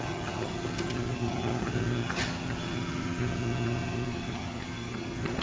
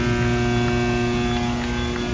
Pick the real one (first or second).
second